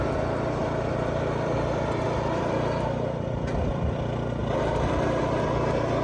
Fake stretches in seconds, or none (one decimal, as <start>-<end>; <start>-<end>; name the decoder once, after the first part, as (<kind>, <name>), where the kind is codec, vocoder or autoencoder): 0.6-3.6 (vocoder, BigVGAN v2); 4.4-5.2